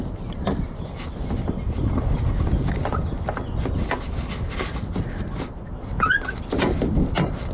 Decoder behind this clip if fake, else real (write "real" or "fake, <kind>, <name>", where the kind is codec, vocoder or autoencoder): real